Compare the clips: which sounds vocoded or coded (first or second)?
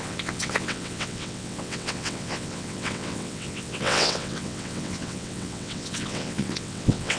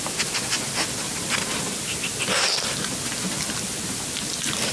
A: first